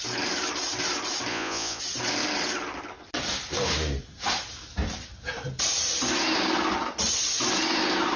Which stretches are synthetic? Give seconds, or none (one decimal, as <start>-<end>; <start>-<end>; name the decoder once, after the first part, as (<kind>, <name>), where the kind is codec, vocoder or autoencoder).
1.3-1.8 (vocoder, Vocos)